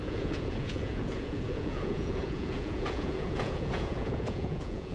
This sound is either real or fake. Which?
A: fake